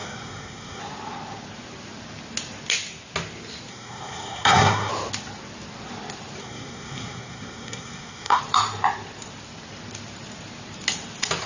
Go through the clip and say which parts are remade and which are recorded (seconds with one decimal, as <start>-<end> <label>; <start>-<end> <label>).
0.0-0.8 remade; 0.8-3.7 recorded; 3.7-4.9 remade; 4.9-6.4 recorded; 6.4-8.4 remade; 8.4-11.5 recorded

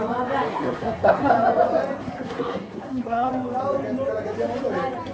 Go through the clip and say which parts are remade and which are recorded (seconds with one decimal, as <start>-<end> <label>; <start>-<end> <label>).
0.0-0.5 recorded; 0.5-1.3 remade; 1.3-2.0 recorded; 2.0-3.3 remade; 3.3-5.1 recorded

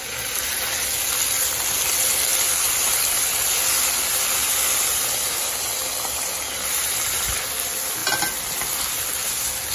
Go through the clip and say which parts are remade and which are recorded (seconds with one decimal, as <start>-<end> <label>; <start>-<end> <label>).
0.0-9.7 recorded

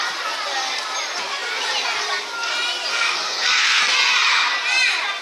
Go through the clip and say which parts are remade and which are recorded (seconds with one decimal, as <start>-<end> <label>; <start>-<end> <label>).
0.0-2.9 recorded; 2.9-3.8 remade; 3.8-5.2 recorded

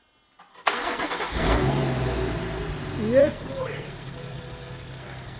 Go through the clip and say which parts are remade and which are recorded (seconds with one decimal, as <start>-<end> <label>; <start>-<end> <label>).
0.0-0.5 recorded; 0.5-1.8 remade; 1.8-3.2 recorded; 3.2-5.4 remade

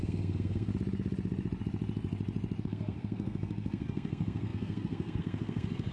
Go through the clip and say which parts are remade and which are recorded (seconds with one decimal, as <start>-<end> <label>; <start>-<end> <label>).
0.0-0.7 remade; 0.7-2.6 recorded; 2.6-5.9 remade

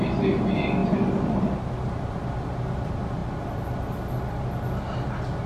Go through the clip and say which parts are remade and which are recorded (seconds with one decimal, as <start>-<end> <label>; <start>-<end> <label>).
0.0-5.5 recorded

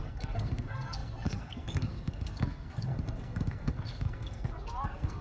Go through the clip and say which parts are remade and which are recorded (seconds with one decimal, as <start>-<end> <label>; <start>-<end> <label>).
0.0-5.2 remade